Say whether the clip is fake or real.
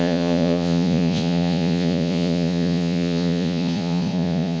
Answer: fake